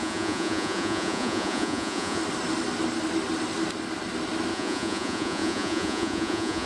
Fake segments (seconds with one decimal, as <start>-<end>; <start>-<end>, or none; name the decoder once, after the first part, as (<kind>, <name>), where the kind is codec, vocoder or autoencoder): 0.0-2.2 (vocoder, Vocos); 4.5-6.7